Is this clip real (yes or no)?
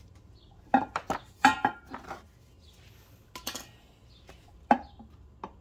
yes